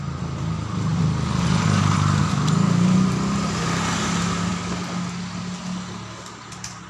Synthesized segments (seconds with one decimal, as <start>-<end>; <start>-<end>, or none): none